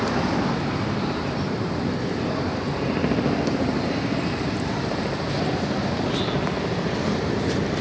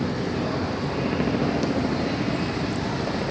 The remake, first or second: first